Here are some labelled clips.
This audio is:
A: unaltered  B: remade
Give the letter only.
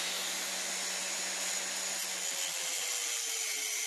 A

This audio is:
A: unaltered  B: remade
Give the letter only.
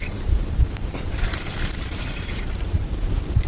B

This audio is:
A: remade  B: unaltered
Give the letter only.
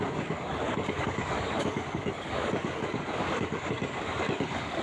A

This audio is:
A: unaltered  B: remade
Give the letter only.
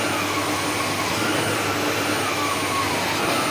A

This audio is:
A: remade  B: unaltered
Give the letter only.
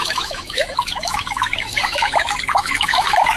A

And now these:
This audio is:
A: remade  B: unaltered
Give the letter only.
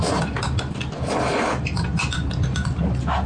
B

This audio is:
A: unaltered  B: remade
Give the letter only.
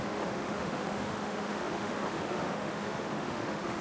B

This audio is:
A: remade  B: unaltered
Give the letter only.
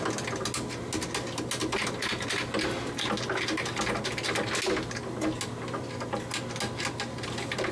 B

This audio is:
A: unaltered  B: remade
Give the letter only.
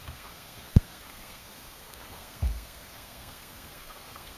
B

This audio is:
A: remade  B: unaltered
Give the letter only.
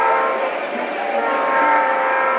B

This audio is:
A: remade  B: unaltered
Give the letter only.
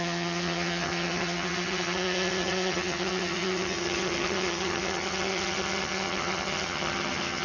A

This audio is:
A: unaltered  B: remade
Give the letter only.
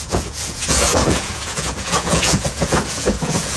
B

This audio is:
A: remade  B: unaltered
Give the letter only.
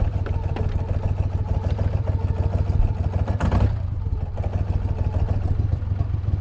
B